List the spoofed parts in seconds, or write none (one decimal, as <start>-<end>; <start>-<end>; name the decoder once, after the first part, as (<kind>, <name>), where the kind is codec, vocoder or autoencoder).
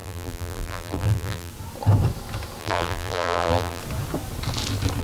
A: 0.0-1.5 (vocoder, BigVGAN v2); 2.6-3.8